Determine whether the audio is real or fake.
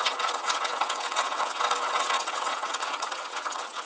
fake